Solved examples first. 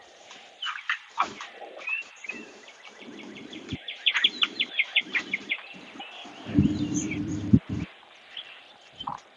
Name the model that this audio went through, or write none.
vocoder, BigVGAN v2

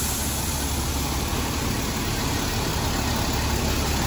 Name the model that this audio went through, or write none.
none